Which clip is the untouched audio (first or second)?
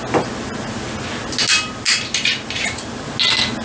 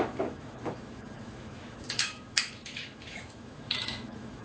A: first